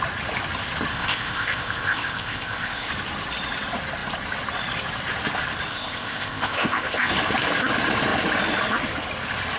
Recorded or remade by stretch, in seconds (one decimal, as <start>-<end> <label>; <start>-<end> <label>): 0.0-0.9 recorded; 0.9-2.9 remade; 2.9-5.7 recorded; 5.7-7.1 remade; 7.1-9.6 recorded